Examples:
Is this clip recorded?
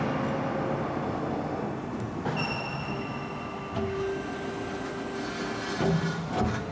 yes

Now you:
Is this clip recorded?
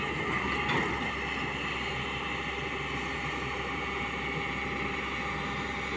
yes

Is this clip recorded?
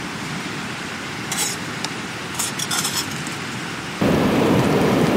no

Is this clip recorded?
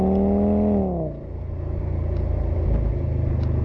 yes